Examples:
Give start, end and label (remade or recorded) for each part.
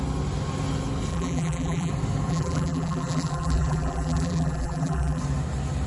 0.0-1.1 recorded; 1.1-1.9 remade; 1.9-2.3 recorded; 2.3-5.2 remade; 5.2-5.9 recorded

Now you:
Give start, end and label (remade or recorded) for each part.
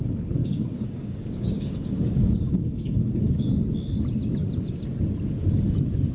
0.0-0.4 recorded; 0.4-3.5 remade; 3.5-6.1 recorded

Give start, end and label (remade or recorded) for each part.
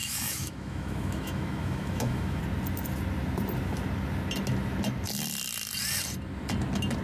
0.0-2.4 remade; 2.4-7.0 recorded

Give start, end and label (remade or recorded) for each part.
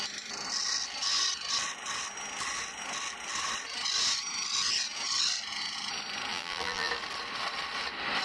0.0-6.3 recorded; 6.3-6.9 remade; 6.9-8.2 recorded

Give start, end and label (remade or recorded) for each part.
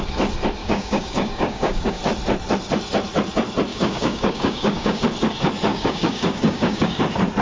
0.0-0.6 recorded; 0.6-2.0 remade; 2.0-3.7 recorded; 3.7-5.0 remade; 5.0-5.7 recorded; 5.7-7.0 remade; 7.0-7.4 recorded